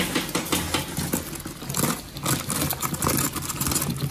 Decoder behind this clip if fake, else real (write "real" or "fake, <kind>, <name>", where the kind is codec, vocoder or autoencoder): real